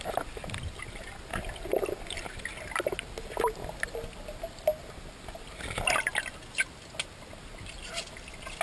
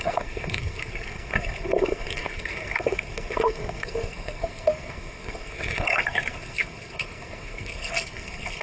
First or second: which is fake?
second